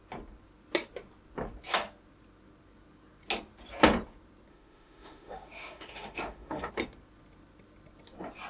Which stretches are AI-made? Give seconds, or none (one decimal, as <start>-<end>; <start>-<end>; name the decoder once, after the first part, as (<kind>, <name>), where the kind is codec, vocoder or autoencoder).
4.5-6.7 (autoencoder, DAC-VAE)